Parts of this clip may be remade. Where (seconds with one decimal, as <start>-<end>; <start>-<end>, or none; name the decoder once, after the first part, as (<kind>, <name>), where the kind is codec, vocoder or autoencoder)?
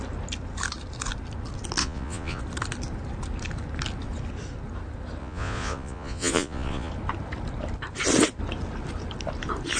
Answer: 1.8-2.4 (vocoder, Vocos); 5.2-6.9